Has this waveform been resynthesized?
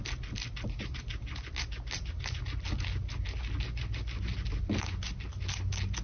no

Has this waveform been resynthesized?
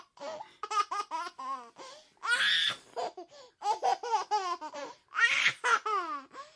no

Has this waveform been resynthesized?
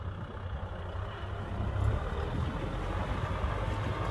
no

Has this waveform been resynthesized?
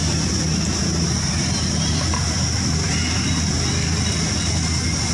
no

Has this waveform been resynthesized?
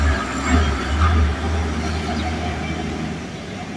no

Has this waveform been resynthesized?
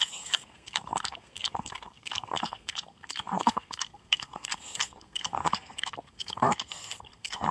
yes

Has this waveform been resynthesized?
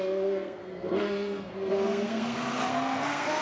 yes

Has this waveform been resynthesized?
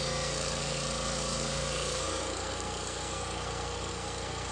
yes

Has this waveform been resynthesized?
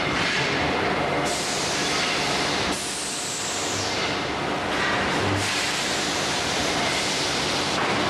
no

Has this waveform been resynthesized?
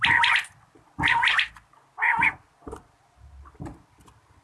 no